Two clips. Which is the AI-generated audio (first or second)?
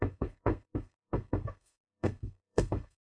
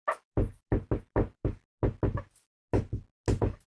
first